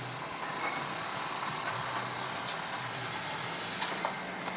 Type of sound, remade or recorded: recorded